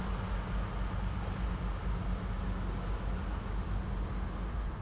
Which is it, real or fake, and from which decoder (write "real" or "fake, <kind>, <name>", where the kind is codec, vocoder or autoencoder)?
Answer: real